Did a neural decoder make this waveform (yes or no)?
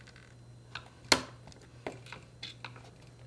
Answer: no